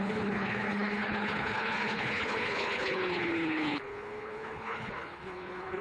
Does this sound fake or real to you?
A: fake